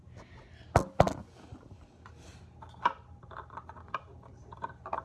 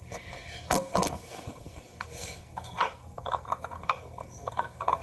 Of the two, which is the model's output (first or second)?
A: second